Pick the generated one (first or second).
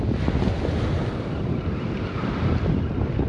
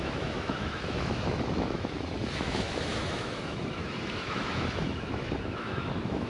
second